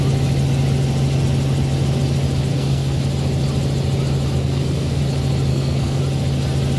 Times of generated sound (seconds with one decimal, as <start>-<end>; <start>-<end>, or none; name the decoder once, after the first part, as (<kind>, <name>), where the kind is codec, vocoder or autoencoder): 2.5-3.0 (codec, SNAC); 4.4-5.0; 5.5-6.0